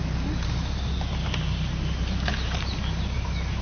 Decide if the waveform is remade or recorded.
recorded